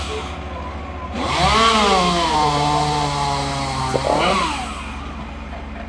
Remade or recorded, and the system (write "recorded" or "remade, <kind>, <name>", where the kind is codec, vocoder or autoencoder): recorded